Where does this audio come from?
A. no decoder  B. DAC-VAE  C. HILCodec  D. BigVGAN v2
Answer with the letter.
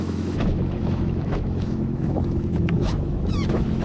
B